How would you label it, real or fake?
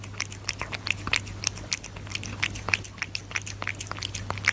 real